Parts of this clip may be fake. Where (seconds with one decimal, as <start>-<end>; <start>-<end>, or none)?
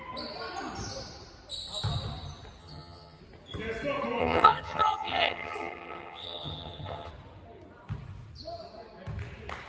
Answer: 2.6-3.2; 4.2-7.1